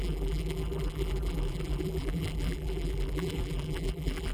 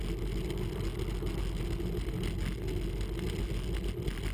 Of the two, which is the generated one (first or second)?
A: first